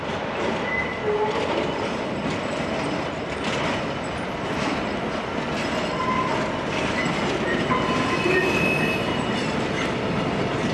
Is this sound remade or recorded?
recorded